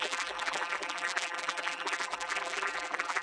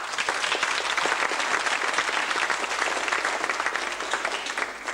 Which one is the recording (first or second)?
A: second